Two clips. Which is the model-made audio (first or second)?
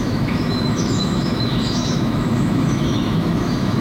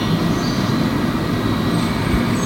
first